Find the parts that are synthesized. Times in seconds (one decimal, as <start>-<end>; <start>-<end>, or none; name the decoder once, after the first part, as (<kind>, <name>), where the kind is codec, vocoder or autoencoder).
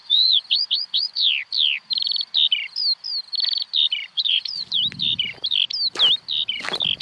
0.0-1.3 (vocoder, Vocos); 4.1-4.8